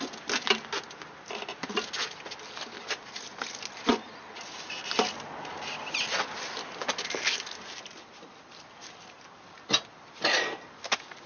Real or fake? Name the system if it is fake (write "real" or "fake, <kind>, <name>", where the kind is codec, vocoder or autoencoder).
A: real